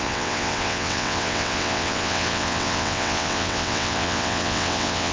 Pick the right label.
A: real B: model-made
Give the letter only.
B